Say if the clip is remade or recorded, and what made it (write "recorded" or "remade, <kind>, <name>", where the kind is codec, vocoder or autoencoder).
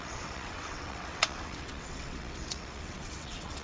remade, vocoder, WaveNeXt